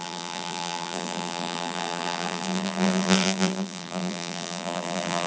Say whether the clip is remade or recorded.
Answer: remade